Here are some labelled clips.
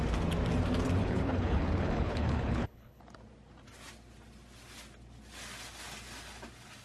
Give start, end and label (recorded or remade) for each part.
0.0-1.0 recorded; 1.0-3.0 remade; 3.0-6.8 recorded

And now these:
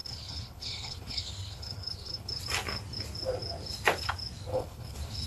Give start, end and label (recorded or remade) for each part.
0.0-2.4 remade; 2.4-4.5 recorded; 4.5-5.3 remade